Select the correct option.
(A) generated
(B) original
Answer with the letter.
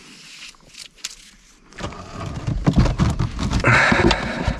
B